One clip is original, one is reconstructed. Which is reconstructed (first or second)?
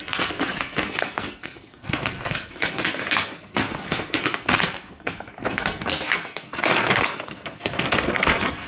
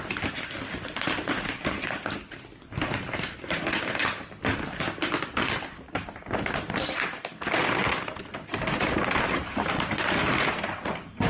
first